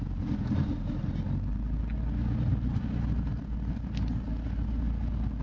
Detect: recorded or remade recorded